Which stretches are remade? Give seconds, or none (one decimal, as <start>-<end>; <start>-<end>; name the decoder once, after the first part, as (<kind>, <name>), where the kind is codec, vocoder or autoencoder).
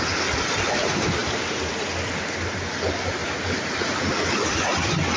1.2-1.8 (vocoder, BigVGAN v2); 3.2-4.0